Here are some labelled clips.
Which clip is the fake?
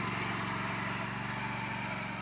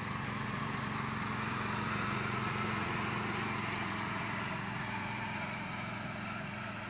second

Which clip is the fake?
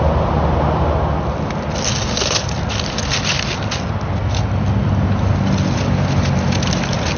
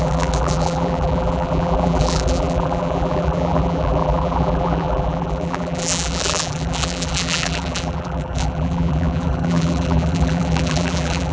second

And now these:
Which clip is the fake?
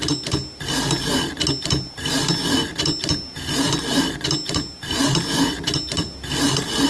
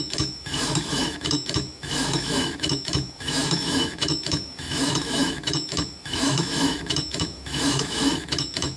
second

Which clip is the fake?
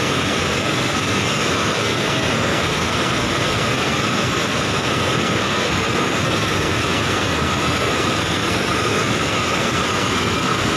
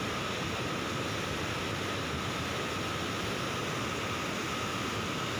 first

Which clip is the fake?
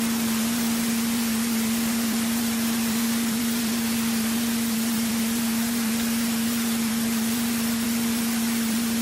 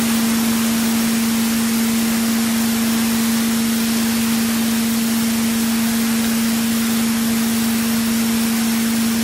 first